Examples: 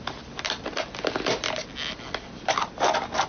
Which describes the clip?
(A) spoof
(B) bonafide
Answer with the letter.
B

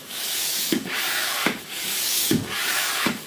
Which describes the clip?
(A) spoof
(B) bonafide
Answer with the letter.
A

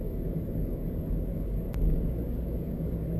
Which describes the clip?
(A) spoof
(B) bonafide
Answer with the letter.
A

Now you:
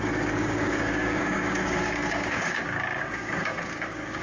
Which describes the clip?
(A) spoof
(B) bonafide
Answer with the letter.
A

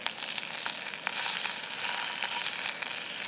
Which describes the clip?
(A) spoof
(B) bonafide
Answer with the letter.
B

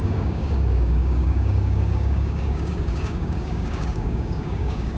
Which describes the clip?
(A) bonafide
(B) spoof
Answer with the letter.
B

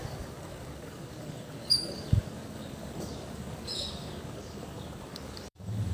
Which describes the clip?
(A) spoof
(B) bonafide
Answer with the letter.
A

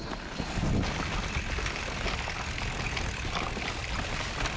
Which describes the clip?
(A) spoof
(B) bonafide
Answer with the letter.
B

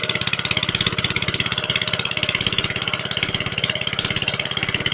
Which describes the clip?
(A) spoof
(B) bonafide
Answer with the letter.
B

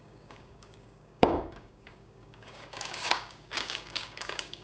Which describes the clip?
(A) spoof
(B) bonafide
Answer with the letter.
A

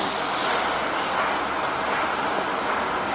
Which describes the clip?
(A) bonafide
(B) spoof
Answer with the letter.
A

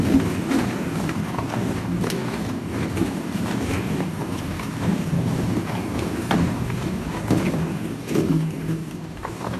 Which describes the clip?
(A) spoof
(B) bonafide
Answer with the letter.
A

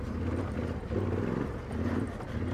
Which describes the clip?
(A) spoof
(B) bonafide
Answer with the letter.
B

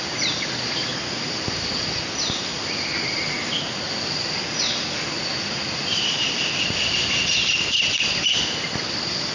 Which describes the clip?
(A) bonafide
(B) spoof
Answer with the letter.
A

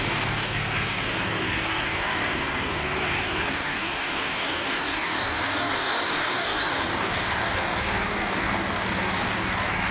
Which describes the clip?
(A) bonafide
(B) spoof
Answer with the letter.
B